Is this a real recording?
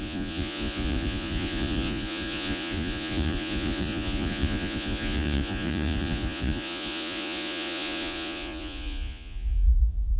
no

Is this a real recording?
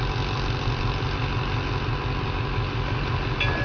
yes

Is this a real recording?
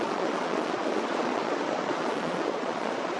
no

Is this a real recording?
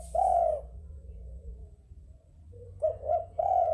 no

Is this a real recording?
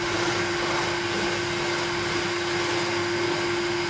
yes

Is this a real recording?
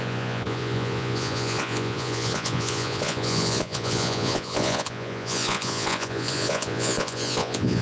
no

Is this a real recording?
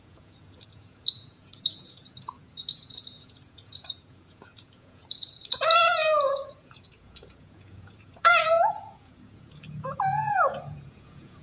no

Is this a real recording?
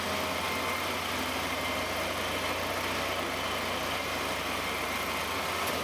yes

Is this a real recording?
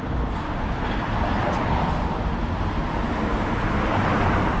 yes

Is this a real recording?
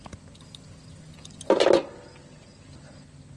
yes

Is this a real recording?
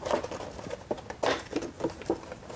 yes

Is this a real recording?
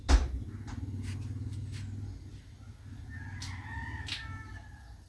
yes